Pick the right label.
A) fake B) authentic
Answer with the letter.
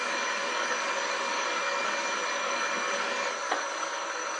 A